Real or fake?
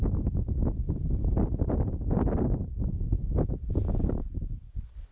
real